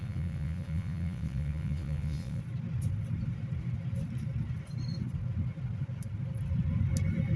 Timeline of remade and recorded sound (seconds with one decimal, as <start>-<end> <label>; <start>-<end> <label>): 0.0-2.4 remade; 2.4-7.4 recorded